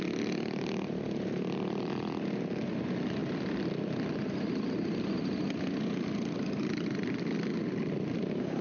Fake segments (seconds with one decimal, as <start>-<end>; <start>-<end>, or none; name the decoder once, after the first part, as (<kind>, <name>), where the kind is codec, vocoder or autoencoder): none